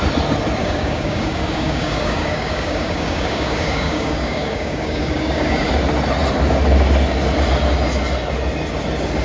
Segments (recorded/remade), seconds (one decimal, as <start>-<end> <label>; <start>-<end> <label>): 0.0-0.6 recorded; 0.6-5.7 remade; 5.7-9.2 recorded